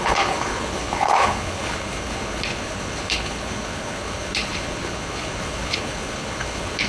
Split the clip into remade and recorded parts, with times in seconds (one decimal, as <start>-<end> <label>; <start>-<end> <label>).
0.0-6.9 remade